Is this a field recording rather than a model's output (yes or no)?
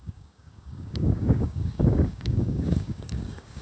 no